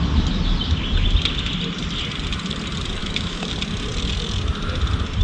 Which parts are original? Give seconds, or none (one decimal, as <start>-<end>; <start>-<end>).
0.0-3.0; 3.5-5.2

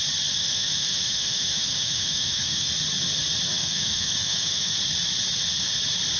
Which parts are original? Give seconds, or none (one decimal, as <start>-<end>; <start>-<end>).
0.0-0.4; 2.7-3.6; 4.8-6.2

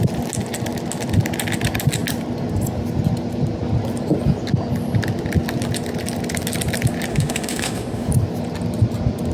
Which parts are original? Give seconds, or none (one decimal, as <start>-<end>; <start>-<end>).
0.0-7.1; 8.1-9.3

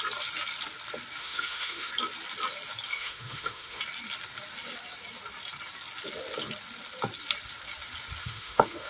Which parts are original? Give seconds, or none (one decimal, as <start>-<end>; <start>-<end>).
0.0-1.2; 1.9-2.9; 3.8-8.2